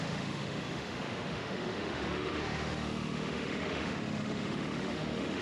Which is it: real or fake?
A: fake